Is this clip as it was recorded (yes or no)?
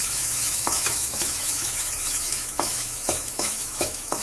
no